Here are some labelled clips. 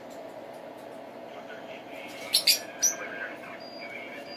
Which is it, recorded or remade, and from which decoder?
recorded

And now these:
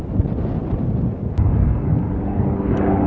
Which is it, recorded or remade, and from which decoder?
recorded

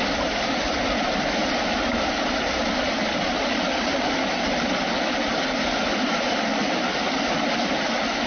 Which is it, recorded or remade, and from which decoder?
recorded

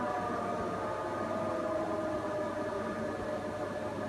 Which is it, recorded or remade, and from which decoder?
recorded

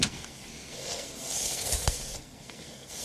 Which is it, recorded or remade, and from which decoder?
remade, codec, SNAC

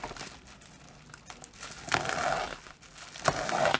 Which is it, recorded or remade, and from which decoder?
recorded